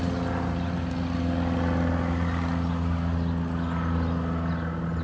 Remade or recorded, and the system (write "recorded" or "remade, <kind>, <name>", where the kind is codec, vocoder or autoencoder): recorded